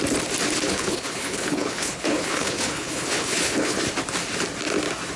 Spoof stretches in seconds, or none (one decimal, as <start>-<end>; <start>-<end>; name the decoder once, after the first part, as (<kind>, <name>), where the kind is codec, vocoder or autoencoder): 0.7-3.8 (codec, HILCodec)